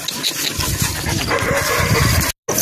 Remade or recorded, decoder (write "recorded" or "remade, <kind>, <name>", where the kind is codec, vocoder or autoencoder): recorded